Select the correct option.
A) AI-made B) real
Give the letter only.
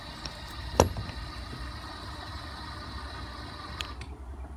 A